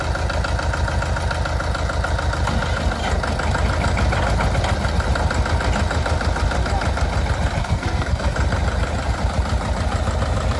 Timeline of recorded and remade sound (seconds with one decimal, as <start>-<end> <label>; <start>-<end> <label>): 0.0-7.6 recorded; 7.6-8.3 remade; 8.3-10.6 recorded

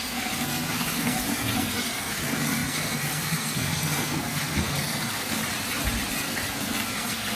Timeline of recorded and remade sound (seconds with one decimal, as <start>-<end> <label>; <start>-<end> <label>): 0.0-5.4 remade; 5.4-6.1 recorded; 6.1-7.4 remade

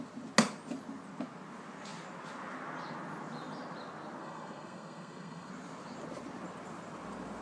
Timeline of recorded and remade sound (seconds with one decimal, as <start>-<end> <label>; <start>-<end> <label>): 0.0-4.2 recorded; 4.2-5.5 remade; 5.5-7.4 recorded

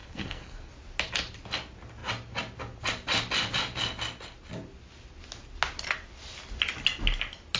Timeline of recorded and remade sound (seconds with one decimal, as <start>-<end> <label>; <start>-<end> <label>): 0.0-0.7 remade; 0.7-7.6 recorded

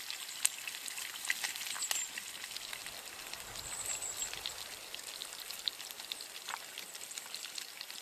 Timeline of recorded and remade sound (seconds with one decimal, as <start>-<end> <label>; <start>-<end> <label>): 0.0-8.0 recorded

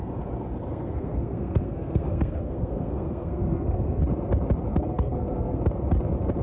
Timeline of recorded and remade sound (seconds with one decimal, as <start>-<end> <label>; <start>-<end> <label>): 0.0-0.7 recorded; 0.7-4.0 remade; 4.0-4.7 recorded; 4.7-5.6 remade; 5.6-6.4 recorded

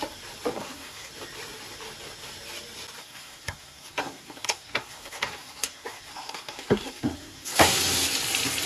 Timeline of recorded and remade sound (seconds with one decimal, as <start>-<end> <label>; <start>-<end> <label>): 0.0-0.5 recorded; 0.5-1.1 remade; 1.1-3.0 recorded; 3.0-7.8 remade; 7.8-8.7 recorded